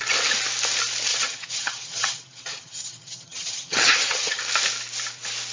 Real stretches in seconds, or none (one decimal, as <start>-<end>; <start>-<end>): 0.0-1.1; 4.4-5.5